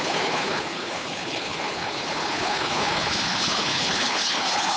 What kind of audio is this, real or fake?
fake